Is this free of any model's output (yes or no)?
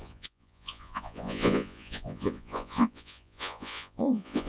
no